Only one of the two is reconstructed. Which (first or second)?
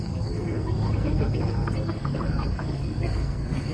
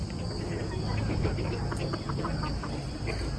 first